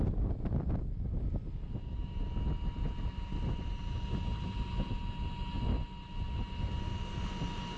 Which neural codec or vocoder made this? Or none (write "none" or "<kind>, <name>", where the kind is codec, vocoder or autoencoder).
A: none